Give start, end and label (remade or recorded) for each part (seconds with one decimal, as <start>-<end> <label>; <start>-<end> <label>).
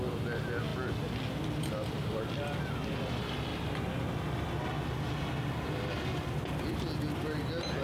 0.0-3.5 recorded; 3.5-4.1 remade; 4.1-7.8 recorded